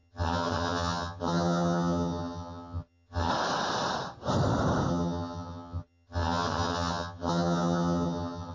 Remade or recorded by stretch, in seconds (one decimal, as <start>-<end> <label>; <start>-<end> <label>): 0.0-3.3 remade; 3.3-4.9 recorded; 4.9-8.5 remade